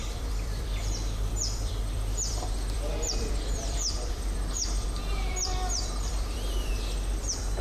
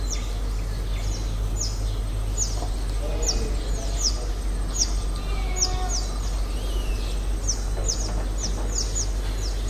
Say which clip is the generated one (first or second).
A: first